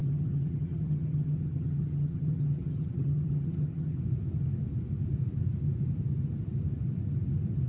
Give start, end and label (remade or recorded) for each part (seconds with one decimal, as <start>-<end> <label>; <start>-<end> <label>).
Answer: 0.0-4.0 remade; 4.0-7.7 recorded

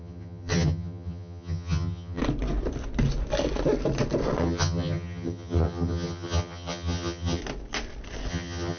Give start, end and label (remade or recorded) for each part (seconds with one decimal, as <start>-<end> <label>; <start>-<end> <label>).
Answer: 0.0-2.2 remade; 2.2-4.4 recorded; 4.4-7.4 remade; 7.4-8.3 recorded; 8.3-8.8 remade

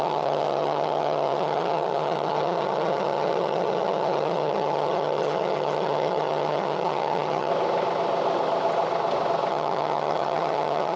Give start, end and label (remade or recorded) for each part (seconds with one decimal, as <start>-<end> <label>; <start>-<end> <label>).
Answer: 0.0-7.5 remade; 7.5-9.5 recorded; 9.5-11.0 remade

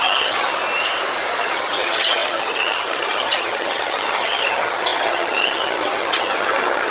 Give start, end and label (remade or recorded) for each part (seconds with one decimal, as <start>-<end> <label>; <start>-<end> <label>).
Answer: 0.0-0.6 remade; 0.6-1.4 recorded; 1.4-6.9 remade

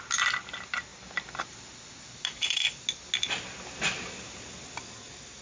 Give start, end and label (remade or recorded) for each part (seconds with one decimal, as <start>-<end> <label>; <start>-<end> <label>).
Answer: 0.0-5.4 recorded

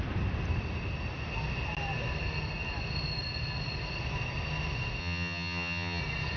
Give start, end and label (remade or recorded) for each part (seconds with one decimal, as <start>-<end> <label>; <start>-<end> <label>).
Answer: 0.0-5.0 recorded; 5.0-6.0 remade; 6.0-6.4 recorded

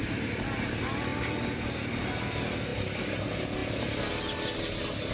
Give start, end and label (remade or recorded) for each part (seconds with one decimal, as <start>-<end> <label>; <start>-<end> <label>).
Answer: 0.0-5.1 recorded